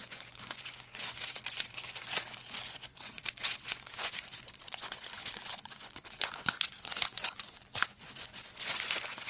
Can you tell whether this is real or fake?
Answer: fake